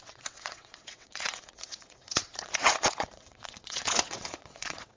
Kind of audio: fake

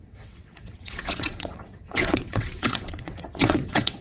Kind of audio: fake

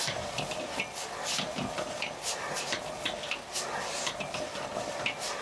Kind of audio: real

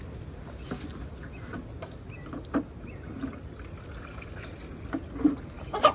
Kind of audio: real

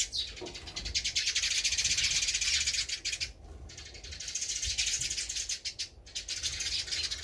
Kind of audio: real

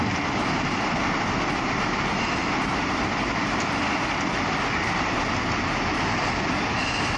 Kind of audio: real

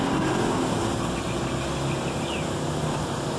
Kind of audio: real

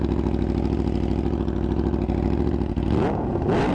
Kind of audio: real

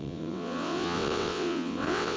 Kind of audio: fake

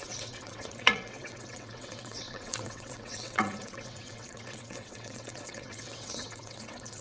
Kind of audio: fake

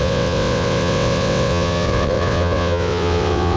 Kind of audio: fake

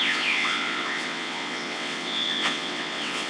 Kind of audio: fake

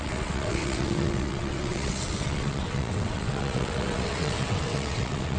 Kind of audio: fake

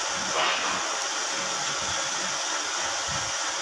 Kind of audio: real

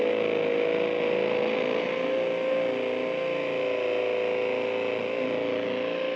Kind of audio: real